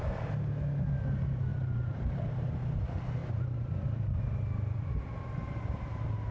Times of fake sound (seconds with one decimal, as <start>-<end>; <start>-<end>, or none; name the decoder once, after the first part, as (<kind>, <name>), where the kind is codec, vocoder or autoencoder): 1.5-2.5 (vocoder, BigVGAN v2); 3.2-4.2